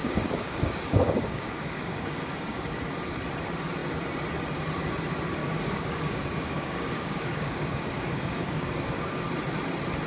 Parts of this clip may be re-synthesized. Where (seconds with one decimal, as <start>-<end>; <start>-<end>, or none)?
0.0-2.8; 5.4-9.2